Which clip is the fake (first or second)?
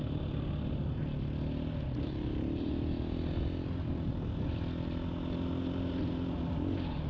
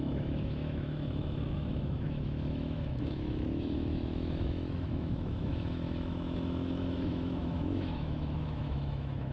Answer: second